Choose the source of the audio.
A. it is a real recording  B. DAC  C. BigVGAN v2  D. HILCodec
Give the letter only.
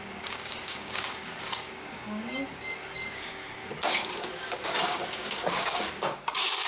B